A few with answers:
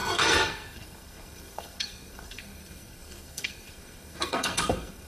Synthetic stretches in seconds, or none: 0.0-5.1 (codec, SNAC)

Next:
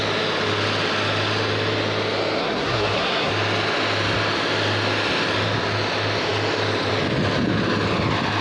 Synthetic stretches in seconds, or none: 2.4-3.3 (codec, SNAC)